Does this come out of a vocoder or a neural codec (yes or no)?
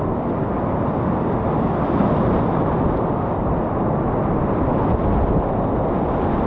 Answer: no